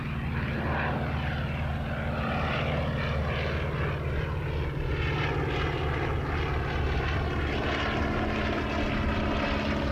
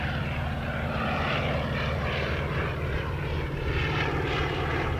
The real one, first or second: first